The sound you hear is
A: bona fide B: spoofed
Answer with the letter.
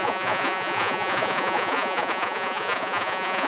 B